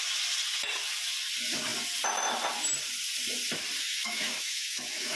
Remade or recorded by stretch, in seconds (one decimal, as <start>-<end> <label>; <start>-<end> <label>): 0.0-3.8 recorded; 3.8-5.2 remade